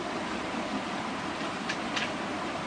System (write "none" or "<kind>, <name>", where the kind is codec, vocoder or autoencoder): none